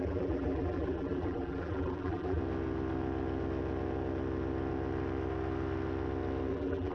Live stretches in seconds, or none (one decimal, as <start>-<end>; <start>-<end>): 2.4-6.5